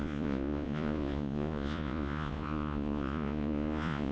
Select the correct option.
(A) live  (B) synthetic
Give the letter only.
B